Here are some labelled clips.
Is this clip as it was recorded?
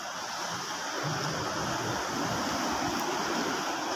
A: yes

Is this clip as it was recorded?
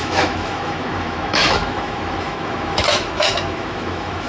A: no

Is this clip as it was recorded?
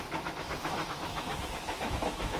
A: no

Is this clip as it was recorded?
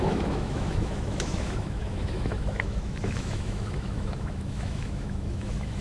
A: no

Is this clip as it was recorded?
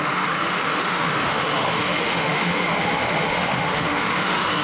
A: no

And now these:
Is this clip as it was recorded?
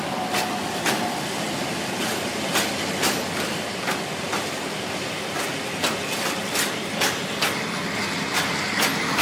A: yes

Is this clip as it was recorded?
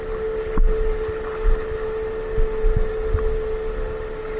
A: yes